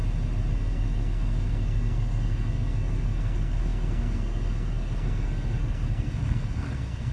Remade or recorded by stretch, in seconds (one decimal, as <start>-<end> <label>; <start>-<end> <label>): 0.0-0.5 recorded; 0.5-7.1 remade